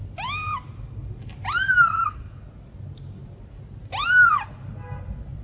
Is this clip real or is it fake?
real